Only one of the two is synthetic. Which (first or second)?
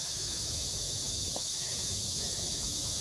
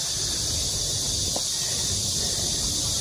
first